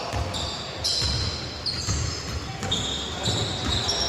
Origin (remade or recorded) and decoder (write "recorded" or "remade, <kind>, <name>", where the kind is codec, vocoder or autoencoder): recorded